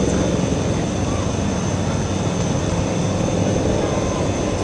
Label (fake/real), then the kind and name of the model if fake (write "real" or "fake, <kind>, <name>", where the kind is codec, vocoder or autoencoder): real